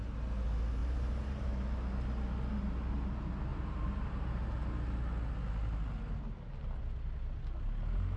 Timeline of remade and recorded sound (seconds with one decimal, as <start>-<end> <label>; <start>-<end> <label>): 0.0-0.8 recorded; 0.8-1.5 remade; 1.5-3.5 recorded; 3.5-4.1 remade; 4.1-8.2 recorded